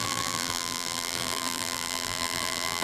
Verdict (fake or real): fake